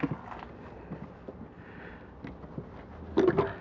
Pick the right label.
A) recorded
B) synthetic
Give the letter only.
A